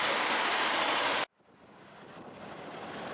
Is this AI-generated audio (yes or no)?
no